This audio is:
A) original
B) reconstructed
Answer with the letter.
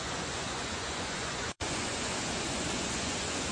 B